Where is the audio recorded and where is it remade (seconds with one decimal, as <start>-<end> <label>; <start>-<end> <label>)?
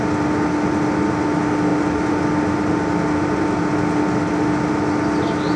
0.0-5.6 recorded